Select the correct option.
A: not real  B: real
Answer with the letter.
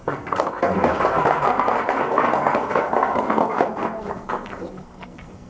A